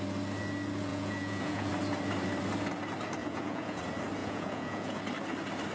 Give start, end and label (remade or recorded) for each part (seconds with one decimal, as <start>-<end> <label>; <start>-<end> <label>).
0.0-0.9 recorded; 0.9-1.7 remade; 1.7-3.2 recorded; 3.2-3.8 remade; 3.8-4.2 recorded; 4.2-5.0 remade; 5.0-5.7 recorded